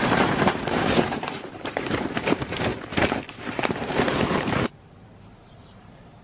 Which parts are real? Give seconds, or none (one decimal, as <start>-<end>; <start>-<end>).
2.7-3.3